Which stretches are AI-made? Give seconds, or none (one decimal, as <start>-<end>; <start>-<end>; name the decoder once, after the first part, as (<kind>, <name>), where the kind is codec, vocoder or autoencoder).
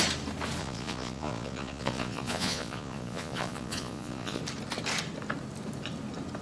0.6-4.4 (vocoder, Vocos)